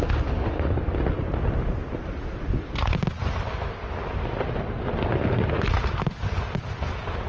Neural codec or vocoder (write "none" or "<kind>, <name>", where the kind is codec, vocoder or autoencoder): none